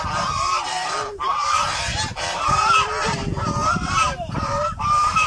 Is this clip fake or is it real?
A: fake